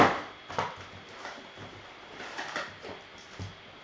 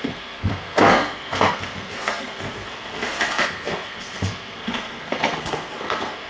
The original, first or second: first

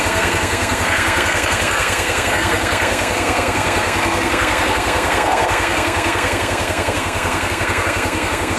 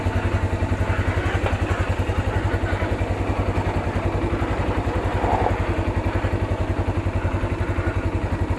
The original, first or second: second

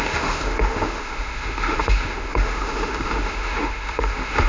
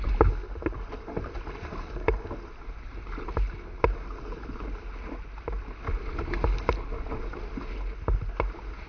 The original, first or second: second